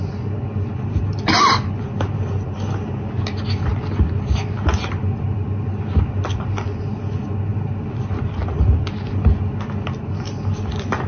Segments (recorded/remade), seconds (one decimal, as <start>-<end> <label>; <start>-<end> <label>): 0.0-11.1 recorded